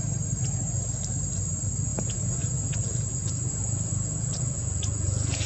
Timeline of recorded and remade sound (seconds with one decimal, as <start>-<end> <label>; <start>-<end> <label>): 0.0-1.9 recorded; 1.9-5.5 remade